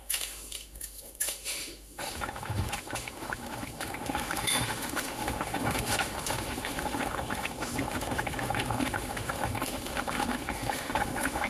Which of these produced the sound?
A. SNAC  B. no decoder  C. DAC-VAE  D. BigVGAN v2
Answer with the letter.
C